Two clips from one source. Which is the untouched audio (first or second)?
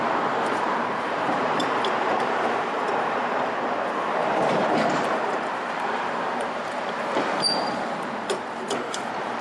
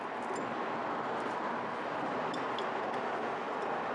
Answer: second